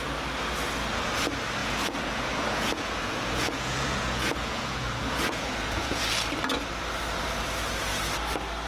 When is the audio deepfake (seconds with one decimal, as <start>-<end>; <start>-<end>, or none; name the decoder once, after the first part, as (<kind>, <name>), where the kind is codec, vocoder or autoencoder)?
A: 1.6-6.0 (vocoder, Vocos)